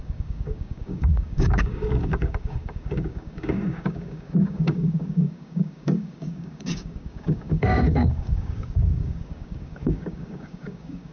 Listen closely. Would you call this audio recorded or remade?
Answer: remade